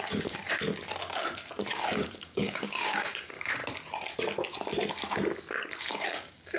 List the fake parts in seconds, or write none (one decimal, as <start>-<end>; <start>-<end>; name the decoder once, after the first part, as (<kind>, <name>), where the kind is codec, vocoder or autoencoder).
0.0-0.4 (codec, DAC); 1.7-3.6; 5.9-6.6